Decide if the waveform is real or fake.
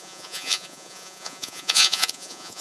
fake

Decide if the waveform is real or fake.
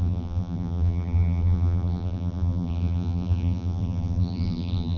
fake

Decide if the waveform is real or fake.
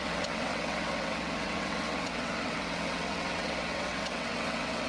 fake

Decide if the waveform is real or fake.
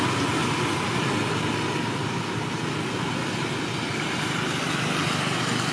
real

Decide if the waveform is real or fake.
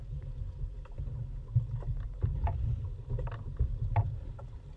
real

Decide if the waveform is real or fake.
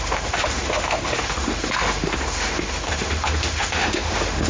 fake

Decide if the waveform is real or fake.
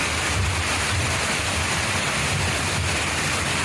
real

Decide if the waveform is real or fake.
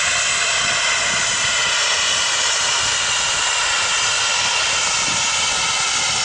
real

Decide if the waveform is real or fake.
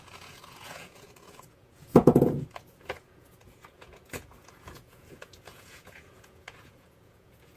fake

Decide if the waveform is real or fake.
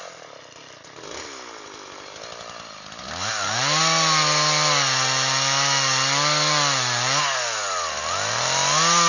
real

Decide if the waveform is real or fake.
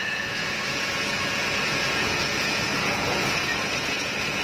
fake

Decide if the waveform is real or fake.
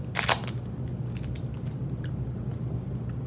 real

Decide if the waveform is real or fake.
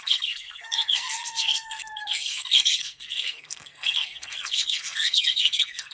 fake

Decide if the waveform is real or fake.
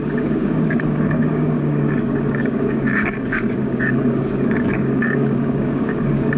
fake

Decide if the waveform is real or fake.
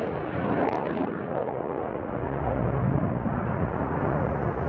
fake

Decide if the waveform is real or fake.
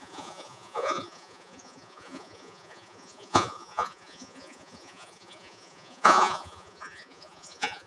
fake